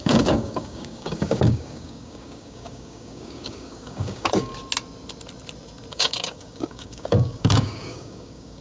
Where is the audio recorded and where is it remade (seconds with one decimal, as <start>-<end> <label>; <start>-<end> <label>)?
0.0-4.5 remade; 4.5-5.9 recorded; 5.9-8.6 remade